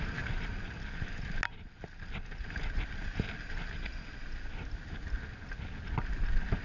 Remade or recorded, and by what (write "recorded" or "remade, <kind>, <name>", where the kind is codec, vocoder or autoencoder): recorded